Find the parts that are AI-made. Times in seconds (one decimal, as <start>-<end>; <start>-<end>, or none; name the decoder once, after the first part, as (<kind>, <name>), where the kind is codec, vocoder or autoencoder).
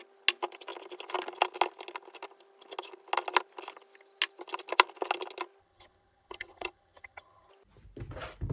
5.6-7.5 (vocoder, HiFi-GAN)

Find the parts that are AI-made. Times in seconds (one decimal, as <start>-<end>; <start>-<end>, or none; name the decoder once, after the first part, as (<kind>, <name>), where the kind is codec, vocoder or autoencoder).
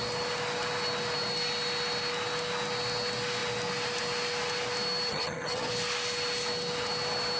5.1-5.7 (vocoder, HiFi-GAN)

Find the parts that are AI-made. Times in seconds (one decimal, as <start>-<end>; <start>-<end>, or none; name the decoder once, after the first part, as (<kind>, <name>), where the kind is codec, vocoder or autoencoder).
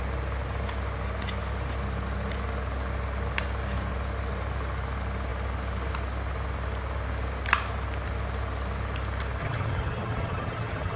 9.4-11.0 (vocoder, HiFi-GAN)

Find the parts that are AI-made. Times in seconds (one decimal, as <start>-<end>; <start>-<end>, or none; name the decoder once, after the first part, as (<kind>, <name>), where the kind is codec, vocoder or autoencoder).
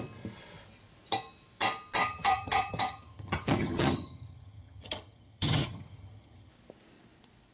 2.0-6.5 (vocoder, HiFi-GAN)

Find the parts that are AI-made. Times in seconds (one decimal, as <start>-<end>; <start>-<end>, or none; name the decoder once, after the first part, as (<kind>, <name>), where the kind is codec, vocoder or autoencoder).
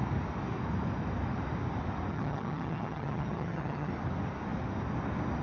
2.1-3.9 (vocoder, HiFi-GAN)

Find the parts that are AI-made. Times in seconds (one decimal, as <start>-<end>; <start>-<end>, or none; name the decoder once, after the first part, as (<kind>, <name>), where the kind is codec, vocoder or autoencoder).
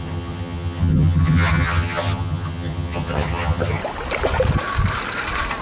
0.0-3.8 (vocoder, HiFi-GAN)